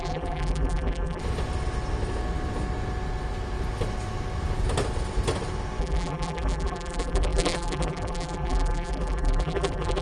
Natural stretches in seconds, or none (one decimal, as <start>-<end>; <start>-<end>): 1.2-5.8